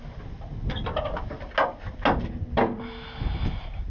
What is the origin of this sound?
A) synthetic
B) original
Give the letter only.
B